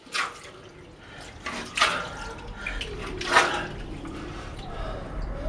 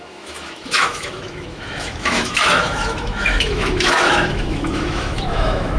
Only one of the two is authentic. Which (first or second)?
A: first